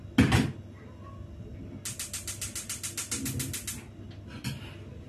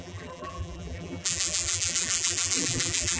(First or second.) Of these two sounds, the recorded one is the first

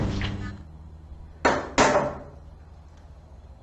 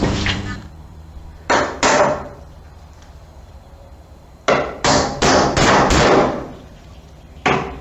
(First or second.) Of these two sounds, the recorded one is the first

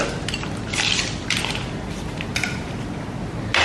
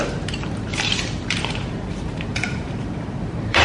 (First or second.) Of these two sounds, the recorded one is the first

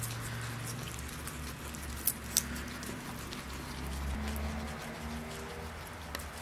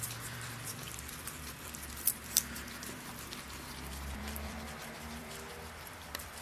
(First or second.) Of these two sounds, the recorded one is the first